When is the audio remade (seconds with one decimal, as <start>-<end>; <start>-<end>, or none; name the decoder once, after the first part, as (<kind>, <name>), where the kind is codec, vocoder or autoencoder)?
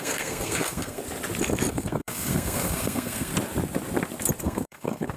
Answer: 0.0-1.0 (codec, SNAC); 1.7-3.3; 4.4-5.2